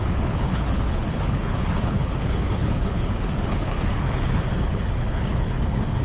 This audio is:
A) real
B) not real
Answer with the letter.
B